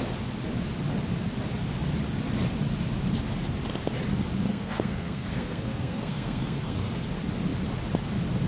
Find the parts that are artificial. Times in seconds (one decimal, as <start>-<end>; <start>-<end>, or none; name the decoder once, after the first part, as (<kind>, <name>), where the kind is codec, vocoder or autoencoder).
4.5-6.9 (codec, SNAC)